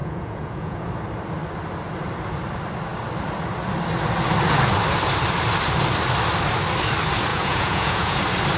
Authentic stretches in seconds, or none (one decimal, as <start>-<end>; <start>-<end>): 0.9-7.3; 8.2-8.6

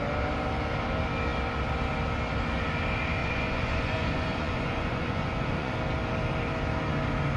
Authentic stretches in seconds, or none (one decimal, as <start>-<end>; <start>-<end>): 0.0-3.2; 5.7-7.4

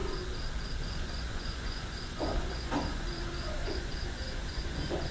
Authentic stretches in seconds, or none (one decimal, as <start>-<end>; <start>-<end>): 0.0-0.8

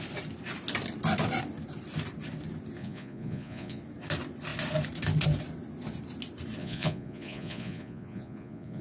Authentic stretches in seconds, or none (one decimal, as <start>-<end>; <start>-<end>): 0.0-2.8; 3.8-6.6

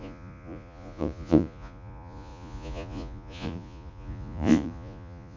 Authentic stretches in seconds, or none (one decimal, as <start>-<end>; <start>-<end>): none

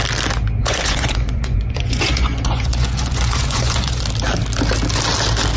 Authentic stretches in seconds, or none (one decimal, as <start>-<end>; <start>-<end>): 0.0-0.6; 4.0-5.6

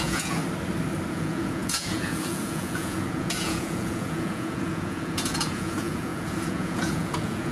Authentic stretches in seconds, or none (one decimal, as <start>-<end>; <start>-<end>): 0.4-1.1